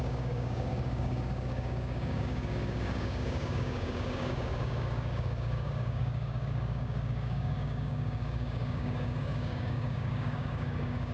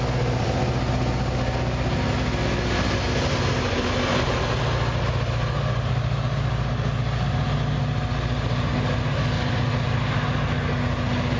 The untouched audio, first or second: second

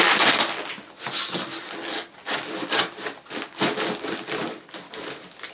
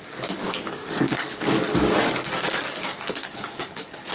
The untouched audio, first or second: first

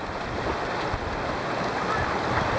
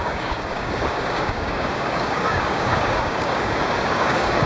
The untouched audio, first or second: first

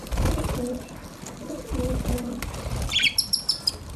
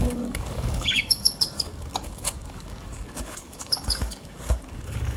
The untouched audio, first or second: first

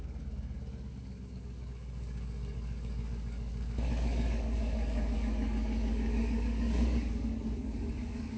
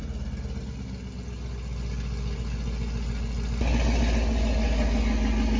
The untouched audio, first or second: second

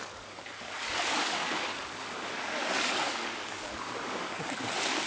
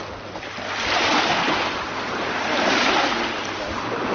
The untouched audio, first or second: second